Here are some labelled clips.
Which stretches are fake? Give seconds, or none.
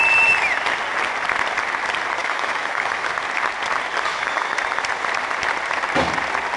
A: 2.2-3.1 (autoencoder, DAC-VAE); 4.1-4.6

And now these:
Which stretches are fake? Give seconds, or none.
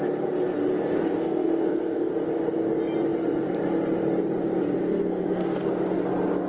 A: 1.0-2.1 (codec, SNAC); 4.8-5.6